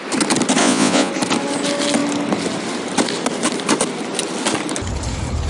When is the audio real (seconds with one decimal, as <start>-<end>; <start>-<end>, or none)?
0.0-0.6; 1.1-5.5